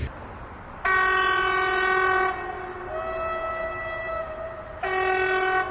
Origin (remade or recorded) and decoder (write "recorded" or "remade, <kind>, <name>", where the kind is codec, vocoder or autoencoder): recorded